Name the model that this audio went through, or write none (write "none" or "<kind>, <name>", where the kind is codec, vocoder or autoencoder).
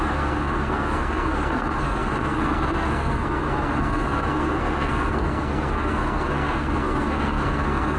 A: codec, SNAC